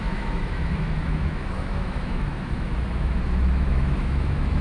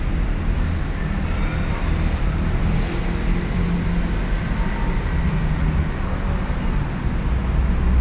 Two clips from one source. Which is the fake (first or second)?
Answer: first